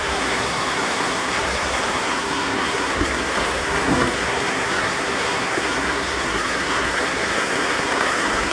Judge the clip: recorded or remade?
remade